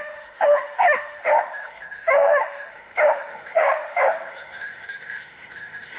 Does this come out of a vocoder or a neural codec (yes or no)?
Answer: yes